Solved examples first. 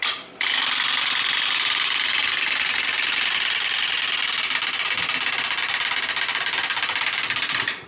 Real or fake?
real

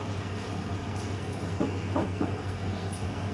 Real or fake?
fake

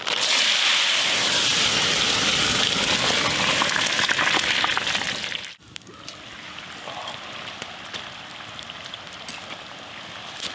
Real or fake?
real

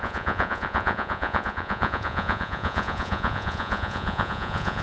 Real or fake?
fake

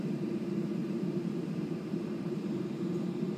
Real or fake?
fake